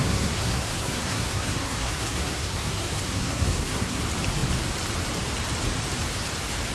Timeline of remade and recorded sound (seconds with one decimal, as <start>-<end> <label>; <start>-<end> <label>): 0.0-4.0 remade; 4.0-6.7 recorded

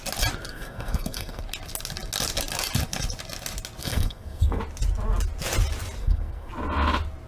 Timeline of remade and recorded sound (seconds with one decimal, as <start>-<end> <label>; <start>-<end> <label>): 0.0-0.5 recorded; 0.5-1.4 remade; 1.4-3.8 recorded; 3.8-4.6 remade; 4.6-6.0 recorded; 6.0-6.5 remade; 6.5-7.3 recorded

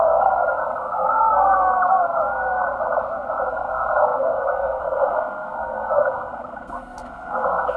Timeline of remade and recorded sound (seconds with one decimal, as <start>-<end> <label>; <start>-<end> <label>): 0.0-1.7 remade; 1.7-3.5 recorded; 3.5-7.8 remade

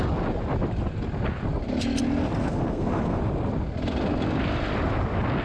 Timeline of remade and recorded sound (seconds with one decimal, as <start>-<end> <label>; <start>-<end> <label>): 0.0-2.4 recorded; 2.4-3.2 remade; 3.2-5.4 recorded

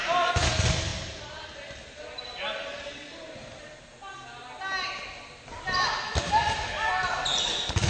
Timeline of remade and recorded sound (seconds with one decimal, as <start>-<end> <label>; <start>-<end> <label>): 0.0-7.9 recorded

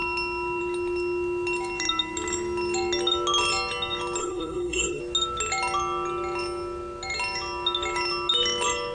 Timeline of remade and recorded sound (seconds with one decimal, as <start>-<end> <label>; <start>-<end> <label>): 0.0-4.2 recorded; 4.2-5.0 remade; 5.0-8.9 recorded

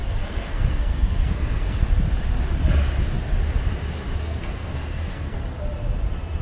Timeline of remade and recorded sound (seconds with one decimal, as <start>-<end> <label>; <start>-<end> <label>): 0.0-1.8 remade; 1.8-4.2 recorded; 4.2-5.4 remade; 5.4-6.4 recorded